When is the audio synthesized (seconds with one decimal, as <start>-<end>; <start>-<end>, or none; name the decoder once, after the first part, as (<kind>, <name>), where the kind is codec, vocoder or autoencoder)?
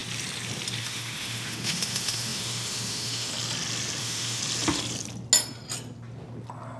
0.8-3.3 (autoencoder, DAC-VAE); 4.0-4.4